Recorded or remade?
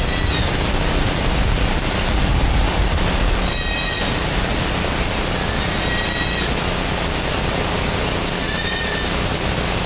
recorded